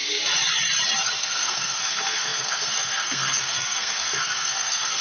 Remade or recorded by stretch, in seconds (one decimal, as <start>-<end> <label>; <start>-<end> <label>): 0.0-1.2 recorded; 1.2-5.0 remade